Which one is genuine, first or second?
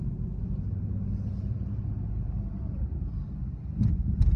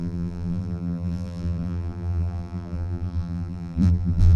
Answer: first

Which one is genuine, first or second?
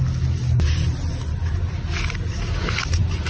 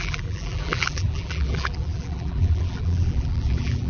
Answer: first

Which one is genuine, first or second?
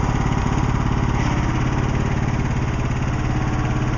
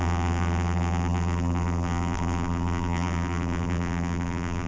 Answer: first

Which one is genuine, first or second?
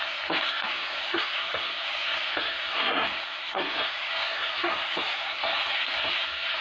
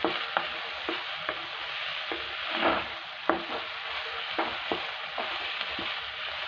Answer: second